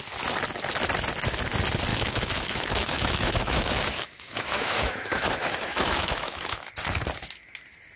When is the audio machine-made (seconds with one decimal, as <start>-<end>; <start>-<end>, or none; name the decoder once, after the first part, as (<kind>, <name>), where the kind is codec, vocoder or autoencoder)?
1.9-6.7 (autoencoder, DAC-VAE)